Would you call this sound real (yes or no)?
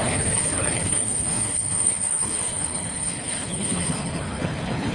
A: no